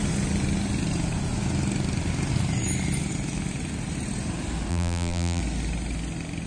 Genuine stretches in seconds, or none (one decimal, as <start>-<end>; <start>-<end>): 0.0-4.7; 5.4-6.5